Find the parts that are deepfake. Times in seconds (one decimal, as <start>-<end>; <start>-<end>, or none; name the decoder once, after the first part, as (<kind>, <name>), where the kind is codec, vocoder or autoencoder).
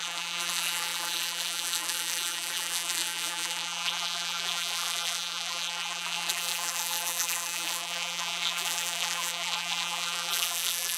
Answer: 0.0-11.0 (vocoder, BigVGAN v2)